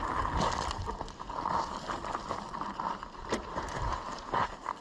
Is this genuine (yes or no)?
yes